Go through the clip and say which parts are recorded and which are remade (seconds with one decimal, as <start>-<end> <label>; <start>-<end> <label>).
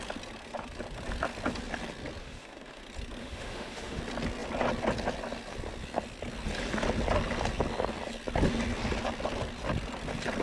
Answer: 0.0-2.2 recorded; 2.2-2.8 remade; 2.8-3.2 recorded; 3.2-4.0 remade; 4.0-10.4 recorded